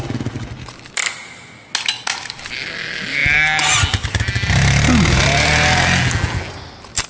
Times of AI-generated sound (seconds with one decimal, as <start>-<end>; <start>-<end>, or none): none